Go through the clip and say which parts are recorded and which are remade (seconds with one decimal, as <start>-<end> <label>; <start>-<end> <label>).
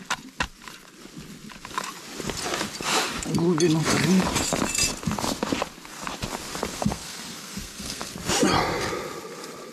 0.0-6.7 recorded; 6.7-8.1 remade; 8.1-9.7 recorded